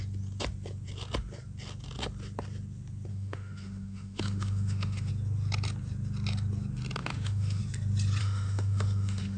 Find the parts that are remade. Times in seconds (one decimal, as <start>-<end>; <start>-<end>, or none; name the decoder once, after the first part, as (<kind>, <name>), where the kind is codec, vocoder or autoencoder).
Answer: 3.1-5.1 (autoencoder, DAC-VAE); 7.0-7.6; 8.2-9.4